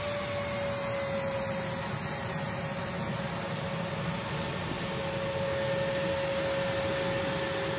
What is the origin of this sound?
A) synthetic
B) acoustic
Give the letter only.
B